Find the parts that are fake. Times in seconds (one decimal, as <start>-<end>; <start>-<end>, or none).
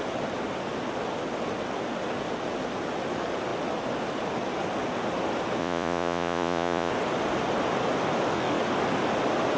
5.6-6.9